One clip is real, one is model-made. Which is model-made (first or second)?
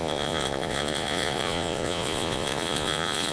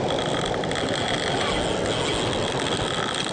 first